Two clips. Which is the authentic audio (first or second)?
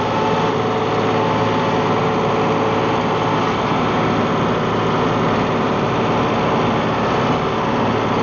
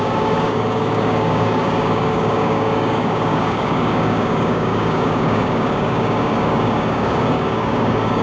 first